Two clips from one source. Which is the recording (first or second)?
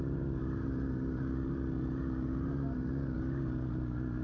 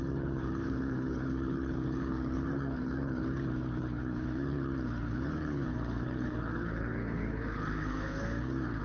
first